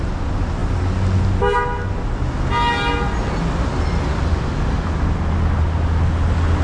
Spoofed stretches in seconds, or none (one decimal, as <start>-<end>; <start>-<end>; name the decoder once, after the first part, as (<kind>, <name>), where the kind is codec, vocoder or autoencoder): none